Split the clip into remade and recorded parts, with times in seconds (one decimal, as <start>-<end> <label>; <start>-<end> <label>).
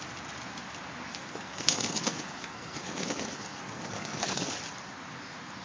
0.0-1.1 recorded; 1.1-4.5 remade; 4.5-5.6 recorded